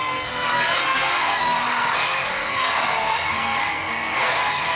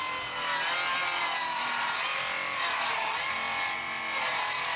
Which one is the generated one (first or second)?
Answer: first